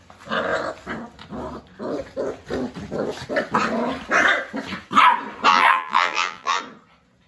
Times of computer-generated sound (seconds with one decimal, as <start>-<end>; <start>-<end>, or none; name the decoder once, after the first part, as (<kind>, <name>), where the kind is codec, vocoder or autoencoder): 5.5-6.6 (vocoder, BigVGAN v2)